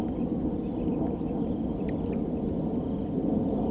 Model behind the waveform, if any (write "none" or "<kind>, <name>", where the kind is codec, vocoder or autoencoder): none